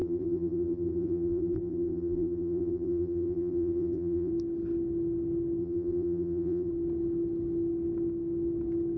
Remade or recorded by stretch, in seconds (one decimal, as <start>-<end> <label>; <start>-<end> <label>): 0.0-4.3 remade; 4.3-5.6 recorded; 5.6-6.7 remade; 6.7-9.0 recorded